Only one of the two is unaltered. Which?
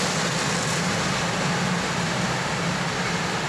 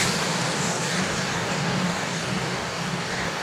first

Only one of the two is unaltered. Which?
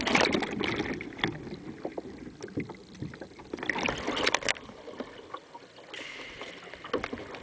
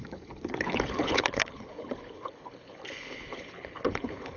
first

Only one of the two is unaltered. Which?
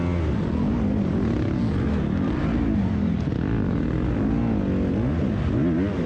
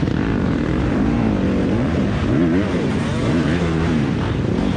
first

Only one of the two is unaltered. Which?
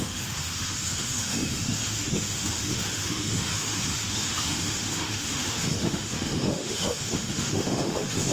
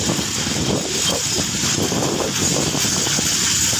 second